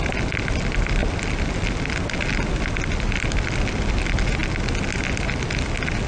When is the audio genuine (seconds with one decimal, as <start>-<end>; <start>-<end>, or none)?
0.0-6.1